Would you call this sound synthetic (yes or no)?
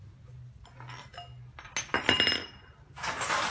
no